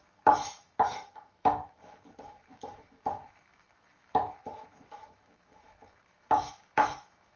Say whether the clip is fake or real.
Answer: fake